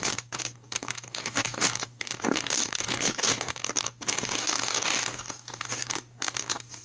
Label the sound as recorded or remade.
remade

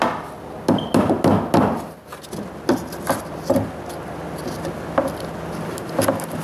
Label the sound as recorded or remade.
recorded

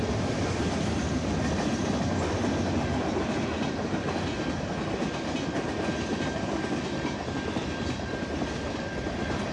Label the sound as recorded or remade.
recorded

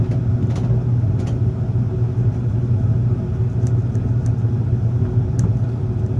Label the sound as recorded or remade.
remade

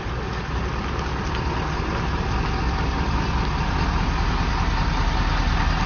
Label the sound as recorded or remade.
recorded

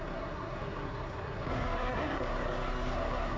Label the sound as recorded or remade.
remade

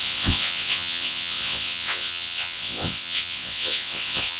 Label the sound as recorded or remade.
remade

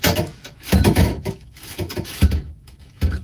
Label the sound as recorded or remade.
remade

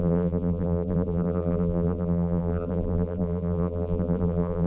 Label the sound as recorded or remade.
remade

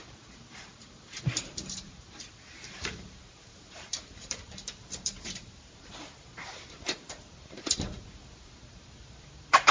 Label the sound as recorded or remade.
remade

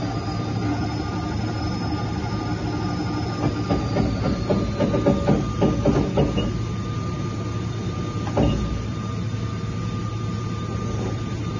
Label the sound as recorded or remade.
recorded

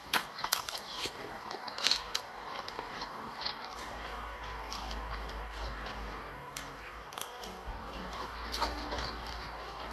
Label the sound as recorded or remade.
remade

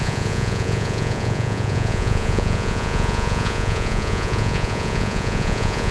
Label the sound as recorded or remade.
remade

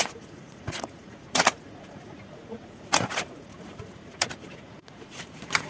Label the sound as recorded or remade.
remade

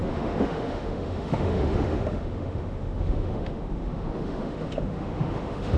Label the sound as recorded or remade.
remade